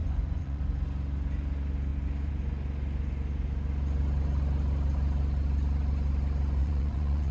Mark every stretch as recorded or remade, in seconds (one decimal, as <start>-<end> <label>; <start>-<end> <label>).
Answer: 0.0-0.6 remade; 0.6-6.6 recorded; 6.6-7.3 remade